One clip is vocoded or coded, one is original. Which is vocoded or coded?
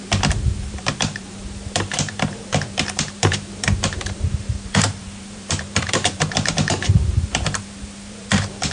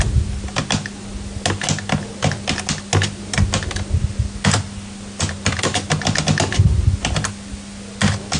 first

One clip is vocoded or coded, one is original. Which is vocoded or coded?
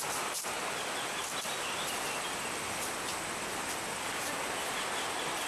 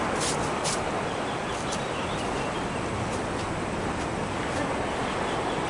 second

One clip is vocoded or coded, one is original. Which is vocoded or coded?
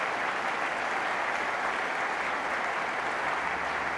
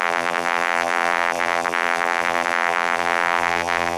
second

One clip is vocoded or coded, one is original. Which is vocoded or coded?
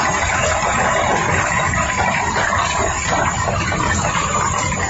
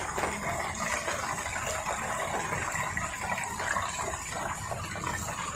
first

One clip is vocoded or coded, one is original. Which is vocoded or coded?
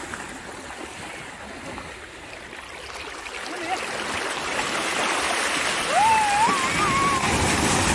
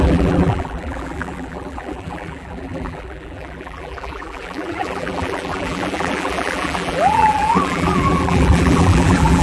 second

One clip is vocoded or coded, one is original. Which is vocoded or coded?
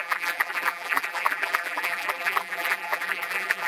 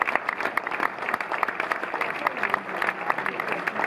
first